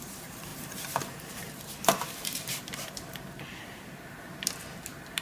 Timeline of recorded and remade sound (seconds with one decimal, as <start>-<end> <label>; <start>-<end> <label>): 0.0-5.2 remade